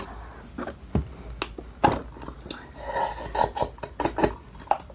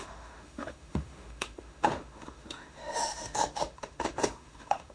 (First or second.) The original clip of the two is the first